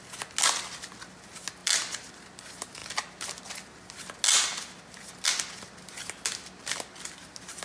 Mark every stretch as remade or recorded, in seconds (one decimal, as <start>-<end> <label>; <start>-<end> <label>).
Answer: 0.0-7.6 recorded